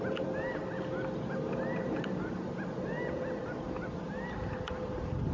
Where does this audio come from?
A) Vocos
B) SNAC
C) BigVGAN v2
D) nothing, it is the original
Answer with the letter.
D